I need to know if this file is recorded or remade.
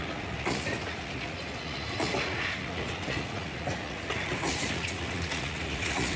remade